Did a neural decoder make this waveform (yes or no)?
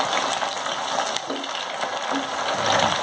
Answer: no